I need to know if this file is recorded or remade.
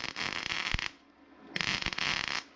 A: recorded